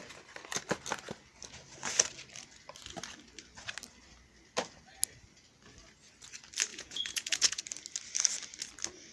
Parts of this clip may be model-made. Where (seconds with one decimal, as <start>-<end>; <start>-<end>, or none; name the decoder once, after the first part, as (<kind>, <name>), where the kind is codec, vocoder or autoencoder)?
6.7-7.6 (vocoder, Vocos)